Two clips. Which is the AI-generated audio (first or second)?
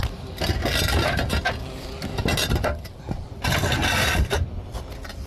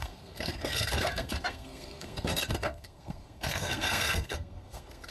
second